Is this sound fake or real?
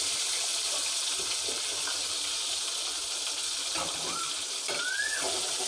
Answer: real